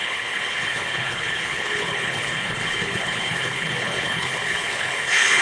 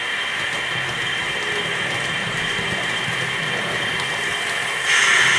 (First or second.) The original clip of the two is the second